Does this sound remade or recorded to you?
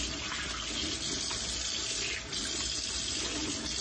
recorded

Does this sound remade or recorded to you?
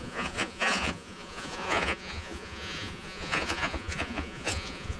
remade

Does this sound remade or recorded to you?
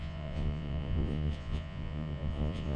remade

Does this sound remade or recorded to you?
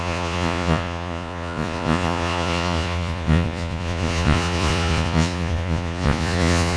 remade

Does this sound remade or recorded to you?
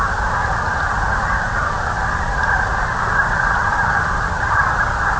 recorded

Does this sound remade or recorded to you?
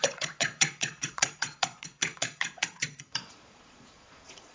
remade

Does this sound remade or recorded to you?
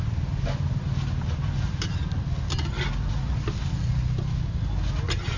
recorded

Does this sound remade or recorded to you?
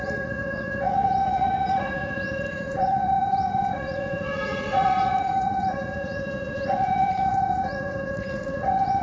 remade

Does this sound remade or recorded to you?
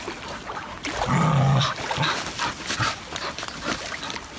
recorded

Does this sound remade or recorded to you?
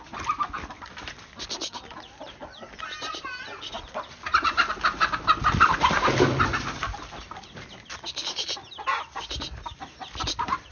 recorded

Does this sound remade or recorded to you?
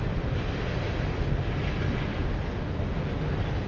recorded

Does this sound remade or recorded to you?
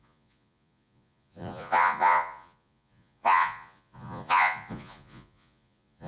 remade